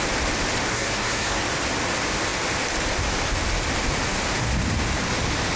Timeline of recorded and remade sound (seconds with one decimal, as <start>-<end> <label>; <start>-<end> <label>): 0.0-0.7 recorded; 0.7-1.4 remade; 1.4-5.6 recorded